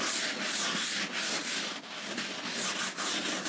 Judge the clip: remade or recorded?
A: recorded